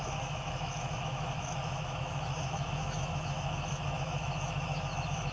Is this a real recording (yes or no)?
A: no